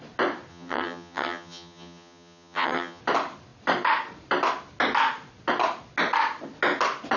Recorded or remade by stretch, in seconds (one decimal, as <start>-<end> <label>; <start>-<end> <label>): 0.0-0.5 recorded; 0.5-3.0 remade; 3.0-7.2 recorded